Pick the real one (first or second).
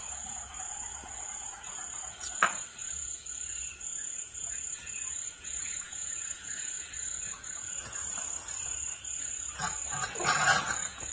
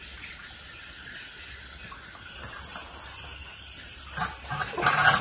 second